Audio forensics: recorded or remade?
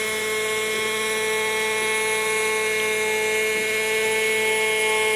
recorded